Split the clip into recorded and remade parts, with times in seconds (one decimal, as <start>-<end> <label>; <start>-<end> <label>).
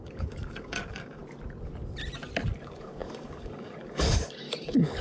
0.0-1.2 remade; 1.2-2.6 recorded; 2.6-5.0 remade